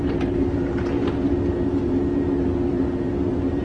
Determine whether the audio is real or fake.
real